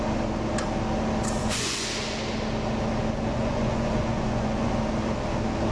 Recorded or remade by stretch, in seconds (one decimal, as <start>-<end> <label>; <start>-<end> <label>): 0.0-1.4 recorded; 1.4-1.9 remade; 1.9-3.3 recorded; 3.3-4.7 remade; 4.7-5.7 recorded